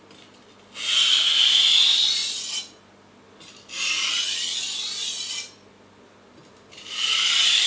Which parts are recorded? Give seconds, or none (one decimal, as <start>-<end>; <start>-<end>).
0.0-7.7